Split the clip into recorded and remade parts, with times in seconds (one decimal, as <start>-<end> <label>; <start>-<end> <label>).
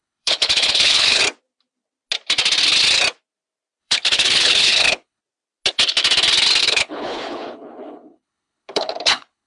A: 0.0-1.2 remade; 1.2-3.8 recorded; 3.8-5.2 remade; 5.2-6.6 recorded; 6.6-9.5 remade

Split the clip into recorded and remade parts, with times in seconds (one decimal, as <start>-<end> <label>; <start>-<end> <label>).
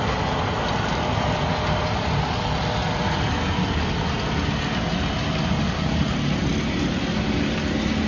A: 0.0-8.1 recorded